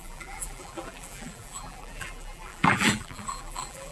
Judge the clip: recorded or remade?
remade